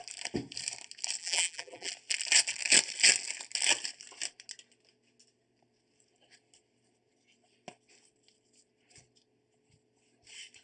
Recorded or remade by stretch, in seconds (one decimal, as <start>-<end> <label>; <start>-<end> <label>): 0.0-1.2 recorded; 1.2-1.9 remade; 1.9-10.6 recorded